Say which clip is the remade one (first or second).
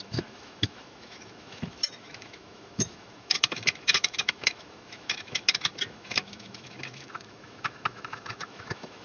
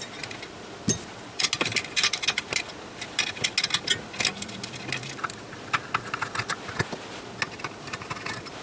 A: first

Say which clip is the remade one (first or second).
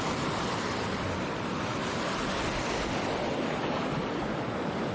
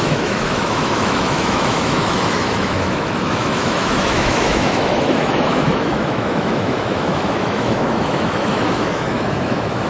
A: second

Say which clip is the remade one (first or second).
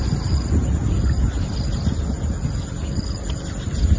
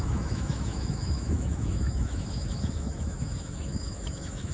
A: second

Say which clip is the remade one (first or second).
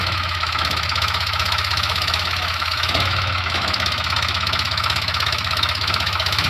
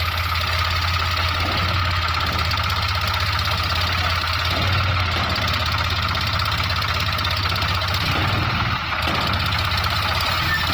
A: first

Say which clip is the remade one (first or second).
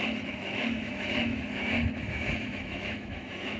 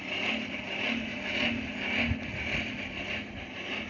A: first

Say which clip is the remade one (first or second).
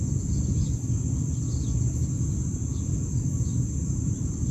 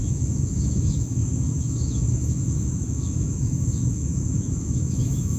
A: second